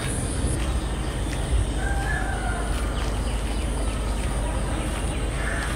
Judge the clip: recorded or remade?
recorded